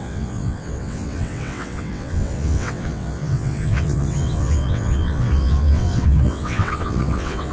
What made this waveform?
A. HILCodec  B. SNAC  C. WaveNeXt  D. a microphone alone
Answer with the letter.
C